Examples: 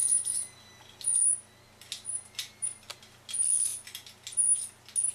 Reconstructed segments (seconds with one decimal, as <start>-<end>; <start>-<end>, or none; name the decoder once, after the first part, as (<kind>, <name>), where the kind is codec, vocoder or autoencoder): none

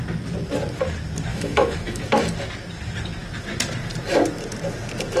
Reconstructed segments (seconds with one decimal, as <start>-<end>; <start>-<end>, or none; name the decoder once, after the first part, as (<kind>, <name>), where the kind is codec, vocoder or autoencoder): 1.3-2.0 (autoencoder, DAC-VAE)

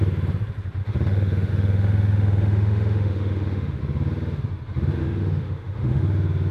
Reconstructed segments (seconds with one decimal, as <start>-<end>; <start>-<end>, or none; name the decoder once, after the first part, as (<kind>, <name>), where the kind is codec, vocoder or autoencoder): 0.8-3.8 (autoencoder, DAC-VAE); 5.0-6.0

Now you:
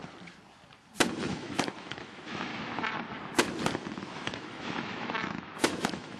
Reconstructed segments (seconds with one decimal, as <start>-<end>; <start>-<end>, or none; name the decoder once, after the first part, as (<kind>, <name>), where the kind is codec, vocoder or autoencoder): 1.1-2.5 (autoencoder, DAC-VAE); 4.0-6.2

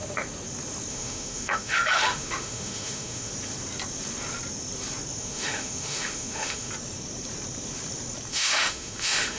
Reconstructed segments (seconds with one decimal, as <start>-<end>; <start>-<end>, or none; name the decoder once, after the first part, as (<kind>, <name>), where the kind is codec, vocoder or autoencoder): 0.9-3.3 (autoencoder, DAC-VAE); 5.2-6.7; 8.3-9.4

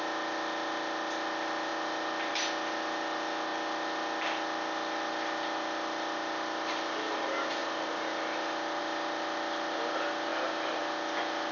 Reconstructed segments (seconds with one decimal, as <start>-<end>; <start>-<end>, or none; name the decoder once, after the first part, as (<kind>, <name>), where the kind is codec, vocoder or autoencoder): none

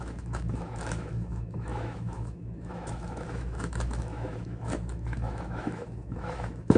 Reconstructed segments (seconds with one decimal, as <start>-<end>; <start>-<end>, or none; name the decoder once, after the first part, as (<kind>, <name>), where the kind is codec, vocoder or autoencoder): 0.0-6.8 (autoencoder, DAC-VAE)